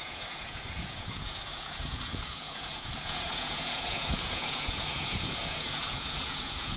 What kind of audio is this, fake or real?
fake